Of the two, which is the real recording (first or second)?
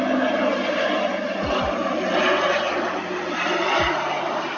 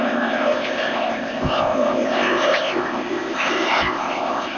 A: first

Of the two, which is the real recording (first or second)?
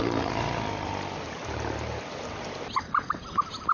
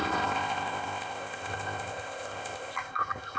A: first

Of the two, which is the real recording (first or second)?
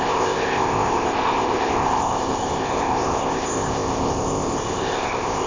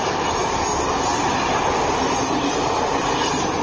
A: second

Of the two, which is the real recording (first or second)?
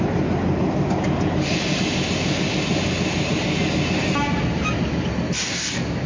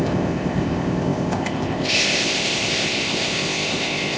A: first